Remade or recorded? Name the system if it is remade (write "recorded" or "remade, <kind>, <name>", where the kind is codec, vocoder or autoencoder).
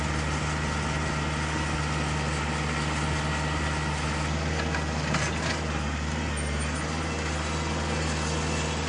recorded